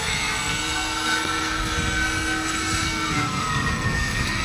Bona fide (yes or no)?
no